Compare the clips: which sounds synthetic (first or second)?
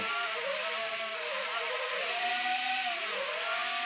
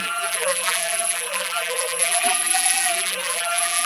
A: second